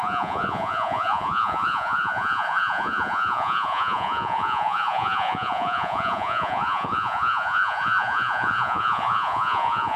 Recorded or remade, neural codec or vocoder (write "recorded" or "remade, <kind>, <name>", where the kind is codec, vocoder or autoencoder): remade, vocoder, Vocos